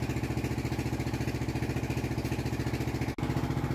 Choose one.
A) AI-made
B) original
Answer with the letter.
B